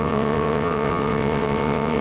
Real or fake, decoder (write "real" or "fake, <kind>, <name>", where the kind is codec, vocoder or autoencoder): fake, vocoder, WaveNeXt